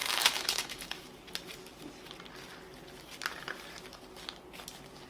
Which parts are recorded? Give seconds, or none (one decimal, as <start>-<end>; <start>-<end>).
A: 1.0-5.1